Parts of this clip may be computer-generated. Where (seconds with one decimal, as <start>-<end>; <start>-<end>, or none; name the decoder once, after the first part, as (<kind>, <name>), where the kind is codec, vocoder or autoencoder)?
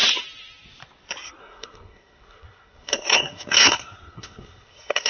1.4-5.1 (codec, SNAC)